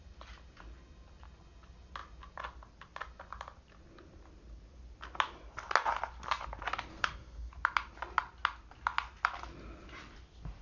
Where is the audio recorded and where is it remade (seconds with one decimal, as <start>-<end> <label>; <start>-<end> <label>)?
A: 0.0-6.9 recorded; 6.9-7.5 remade; 7.5-10.6 recorded

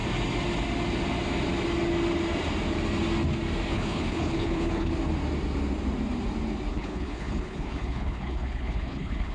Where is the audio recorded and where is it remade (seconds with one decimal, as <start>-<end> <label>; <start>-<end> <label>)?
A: 0.0-3.7 recorded; 3.7-4.9 remade; 4.9-6.7 recorded; 6.7-9.3 remade

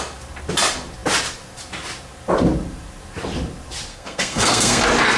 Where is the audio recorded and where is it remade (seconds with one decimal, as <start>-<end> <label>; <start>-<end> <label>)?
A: 0.0-3.9 recorded; 3.9-4.8 remade; 4.8-5.2 recorded

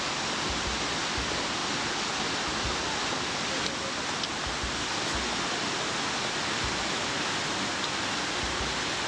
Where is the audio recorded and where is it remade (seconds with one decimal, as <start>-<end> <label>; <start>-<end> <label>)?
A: 0.0-9.1 recorded

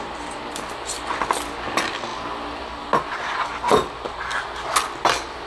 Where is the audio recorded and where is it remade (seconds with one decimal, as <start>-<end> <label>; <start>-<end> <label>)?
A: 0.0-5.5 recorded

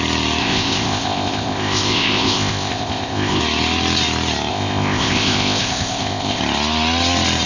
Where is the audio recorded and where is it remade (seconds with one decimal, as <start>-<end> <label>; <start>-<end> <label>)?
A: 0.0-0.4 recorded; 0.4-3.4 remade; 3.4-4.5 recorded; 4.5-6.4 remade; 6.4-7.5 recorded